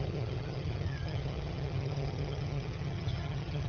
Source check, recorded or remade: remade